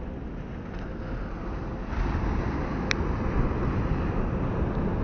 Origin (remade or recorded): recorded